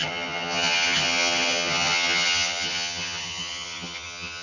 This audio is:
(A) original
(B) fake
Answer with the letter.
B